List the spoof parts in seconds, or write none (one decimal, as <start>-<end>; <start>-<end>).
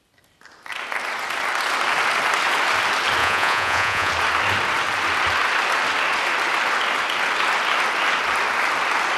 3.2-4.1